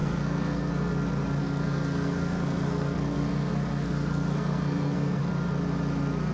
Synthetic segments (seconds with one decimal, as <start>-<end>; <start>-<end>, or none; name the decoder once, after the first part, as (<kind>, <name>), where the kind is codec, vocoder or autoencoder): 0.0-0.7 (codec, SNAC); 1.4-5.2